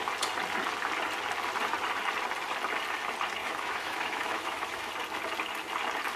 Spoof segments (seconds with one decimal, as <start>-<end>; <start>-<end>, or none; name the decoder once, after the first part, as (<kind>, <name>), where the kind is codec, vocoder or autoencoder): 3.4-4.9 (autoencoder, DAC-VAE)